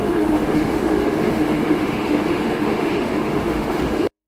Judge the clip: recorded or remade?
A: remade